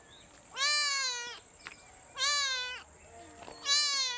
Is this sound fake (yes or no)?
no